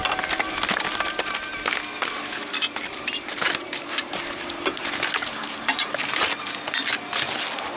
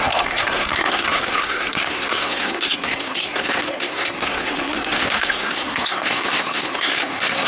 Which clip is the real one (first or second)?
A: first